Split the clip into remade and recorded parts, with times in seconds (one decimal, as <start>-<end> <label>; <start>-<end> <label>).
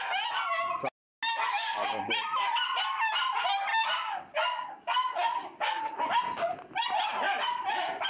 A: 0.0-1.5 recorded; 1.5-2.1 remade; 2.1-3.7 recorded; 3.7-5.8 remade; 5.8-8.1 recorded